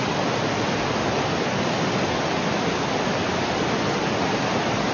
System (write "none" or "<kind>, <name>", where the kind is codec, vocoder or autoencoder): none